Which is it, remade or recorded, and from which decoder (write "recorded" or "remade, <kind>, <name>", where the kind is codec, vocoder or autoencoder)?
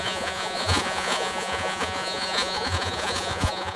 remade, vocoder, Vocos